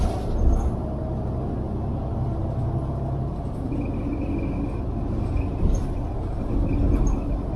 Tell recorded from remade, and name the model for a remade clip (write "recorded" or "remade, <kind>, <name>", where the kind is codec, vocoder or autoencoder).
recorded